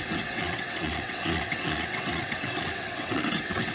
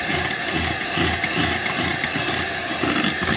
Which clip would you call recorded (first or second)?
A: second